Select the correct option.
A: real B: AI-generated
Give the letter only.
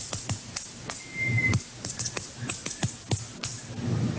A